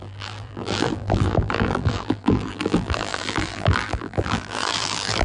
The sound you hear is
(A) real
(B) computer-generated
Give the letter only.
B